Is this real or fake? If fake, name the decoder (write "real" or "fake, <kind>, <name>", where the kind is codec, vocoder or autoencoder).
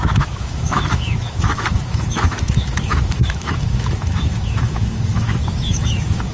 fake, autoencoder, DAC-VAE